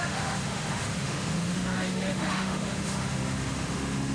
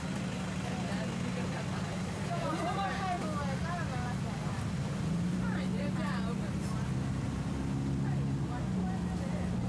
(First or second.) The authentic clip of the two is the second